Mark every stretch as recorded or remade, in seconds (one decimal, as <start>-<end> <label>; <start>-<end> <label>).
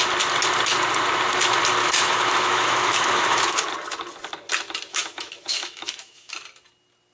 0.0-1.8 recorded; 1.8-3.7 remade; 3.7-4.9 recorded; 4.9-6.3 remade; 6.3-7.1 recorded